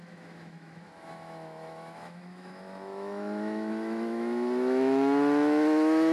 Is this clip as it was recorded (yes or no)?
no